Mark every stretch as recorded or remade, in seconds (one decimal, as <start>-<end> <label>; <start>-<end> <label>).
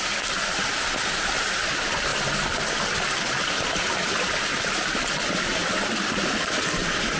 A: 0.0-7.2 recorded